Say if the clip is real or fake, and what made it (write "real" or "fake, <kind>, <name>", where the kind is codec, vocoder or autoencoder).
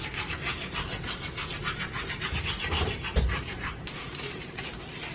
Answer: fake, vocoder, BigVGAN v2